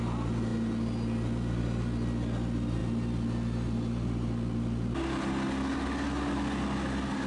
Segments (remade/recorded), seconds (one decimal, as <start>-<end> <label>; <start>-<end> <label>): 0.0-7.3 recorded